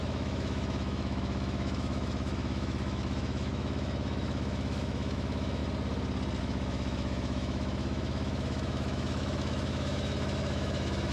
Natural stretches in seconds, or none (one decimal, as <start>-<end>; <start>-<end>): 5.6-6.4